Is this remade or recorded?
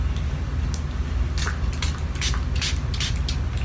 recorded